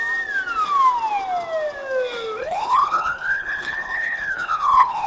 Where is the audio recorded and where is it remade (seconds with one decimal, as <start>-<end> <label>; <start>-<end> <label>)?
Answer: 0.0-2.4 recorded; 2.4-5.1 remade